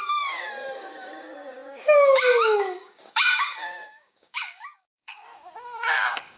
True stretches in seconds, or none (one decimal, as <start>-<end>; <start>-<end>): none